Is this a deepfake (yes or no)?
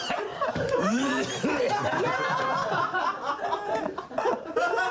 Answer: yes